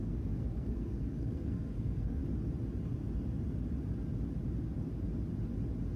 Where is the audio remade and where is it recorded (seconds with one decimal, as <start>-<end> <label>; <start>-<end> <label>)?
0.0-2.2 remade; 2.2-6.0 recorded